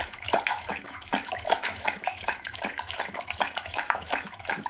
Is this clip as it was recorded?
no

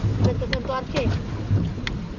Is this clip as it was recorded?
yes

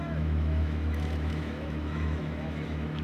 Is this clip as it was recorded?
no